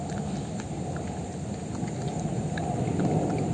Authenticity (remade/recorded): recorded